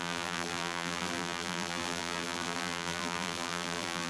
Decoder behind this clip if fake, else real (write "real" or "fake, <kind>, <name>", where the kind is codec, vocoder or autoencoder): fake, vocoder, BigVGAN v2